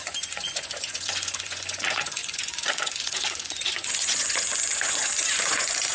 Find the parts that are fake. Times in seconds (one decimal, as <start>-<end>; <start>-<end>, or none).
0.0-5.9